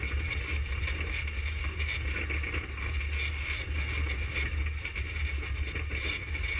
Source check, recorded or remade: recorded